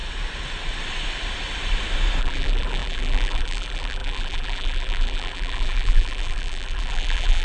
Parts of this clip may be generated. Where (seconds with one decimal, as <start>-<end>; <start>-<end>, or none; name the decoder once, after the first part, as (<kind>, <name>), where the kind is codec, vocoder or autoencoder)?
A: 2.2-7.4 (vocoder, BigVGAN v2)